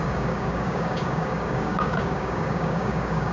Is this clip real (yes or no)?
no